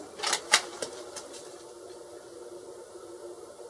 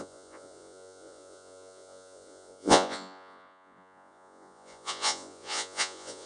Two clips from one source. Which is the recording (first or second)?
first